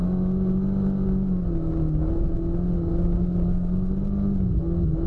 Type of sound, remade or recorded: recorded